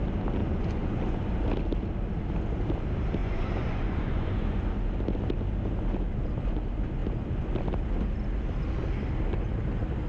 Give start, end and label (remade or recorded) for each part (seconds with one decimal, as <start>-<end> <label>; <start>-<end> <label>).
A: 0.0-0.4 recorded; 0.4-1.3 remade; 1.3-3.2 recorded; 3.2-4.7 remade; 4.7-10.1 recorded